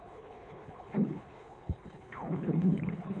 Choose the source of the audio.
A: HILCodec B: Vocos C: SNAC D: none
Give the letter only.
A